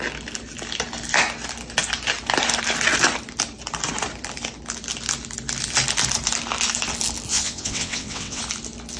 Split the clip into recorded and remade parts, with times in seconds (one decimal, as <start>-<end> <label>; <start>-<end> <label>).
0.0-7.3 recorded; 7.3-8.4 remade; 8.4-9.0 recorded